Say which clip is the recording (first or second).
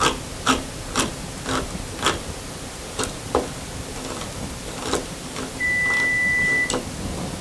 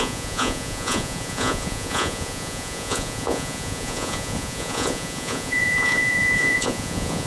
first